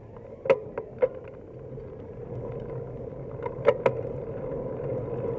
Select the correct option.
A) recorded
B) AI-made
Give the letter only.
A